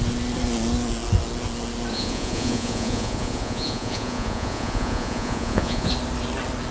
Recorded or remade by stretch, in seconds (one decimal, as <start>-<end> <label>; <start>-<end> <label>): 0.0-1.9 recorded; 1.9-5.9 remade; 5.9-6.7 recorded

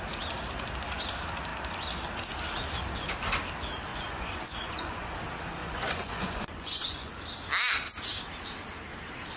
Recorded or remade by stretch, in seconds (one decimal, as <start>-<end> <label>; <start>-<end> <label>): 0.0-3.9 recorded; 3.9-5.1 remade; 5.1-5.6 recorded; 5.6-7.2 remade; 7.2-9.4 recorded